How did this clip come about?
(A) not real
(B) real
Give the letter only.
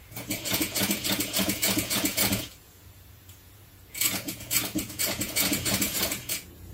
A